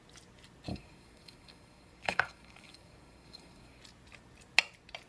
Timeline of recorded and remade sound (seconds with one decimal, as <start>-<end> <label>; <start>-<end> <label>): 0.0-0.7 recorded; 0.7-3.8 remade; 3.8-5.1 recorded